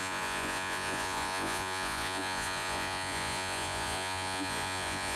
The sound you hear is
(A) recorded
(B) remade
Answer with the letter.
B